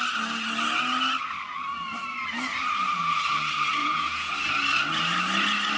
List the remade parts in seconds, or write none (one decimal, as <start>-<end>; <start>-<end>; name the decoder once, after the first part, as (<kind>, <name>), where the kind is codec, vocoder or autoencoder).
3.8-4.3 (vocoder, Vocos)